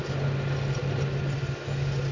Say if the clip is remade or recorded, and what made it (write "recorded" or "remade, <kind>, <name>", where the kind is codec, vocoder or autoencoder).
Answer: recorded